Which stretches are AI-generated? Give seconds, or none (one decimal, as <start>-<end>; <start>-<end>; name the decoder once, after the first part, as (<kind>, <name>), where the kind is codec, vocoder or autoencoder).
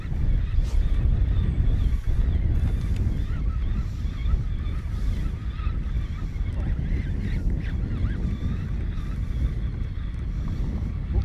none